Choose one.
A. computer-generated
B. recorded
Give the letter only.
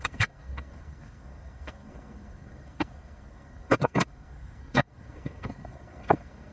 A